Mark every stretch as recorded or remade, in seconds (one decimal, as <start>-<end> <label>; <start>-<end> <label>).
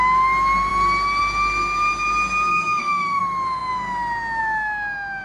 0.0-2.5 recorded; 2.5-3.2 remade; 3.2-5.2 recorded